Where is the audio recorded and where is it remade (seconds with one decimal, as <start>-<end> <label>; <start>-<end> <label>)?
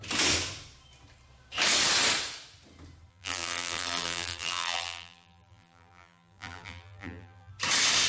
0.0-3.1 recorded; 3.1-7.5 remade; 7.5-8.1 recorded